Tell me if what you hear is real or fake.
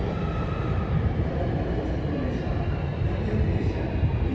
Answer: real